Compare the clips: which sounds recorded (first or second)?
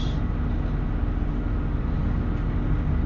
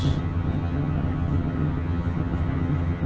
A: first